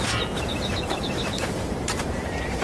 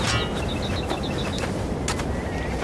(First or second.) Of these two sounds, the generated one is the first